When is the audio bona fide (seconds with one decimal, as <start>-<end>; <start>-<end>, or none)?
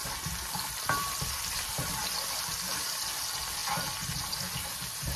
3.1-5.2